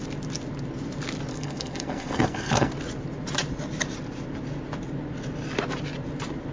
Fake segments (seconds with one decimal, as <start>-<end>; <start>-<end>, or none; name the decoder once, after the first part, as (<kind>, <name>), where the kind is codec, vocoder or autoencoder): 1.3-2.7 (codec, SNAC)